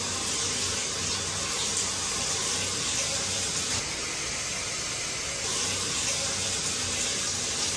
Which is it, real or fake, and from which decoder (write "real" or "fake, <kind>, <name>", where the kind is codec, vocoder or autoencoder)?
real